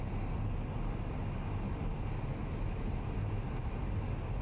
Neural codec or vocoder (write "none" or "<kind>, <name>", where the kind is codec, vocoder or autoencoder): none